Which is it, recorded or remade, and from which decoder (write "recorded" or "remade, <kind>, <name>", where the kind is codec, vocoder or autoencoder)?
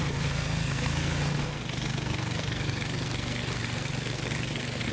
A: remade, codec, SNAC